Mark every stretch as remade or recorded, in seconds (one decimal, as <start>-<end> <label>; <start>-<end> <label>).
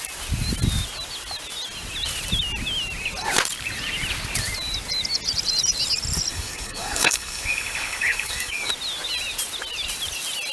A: 0.0-6.3 recorded; 6.3-8.7 remade; 8.7-10.5 recorded